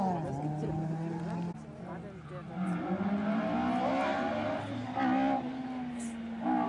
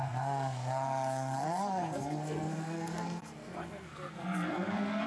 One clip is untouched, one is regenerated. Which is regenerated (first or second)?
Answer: second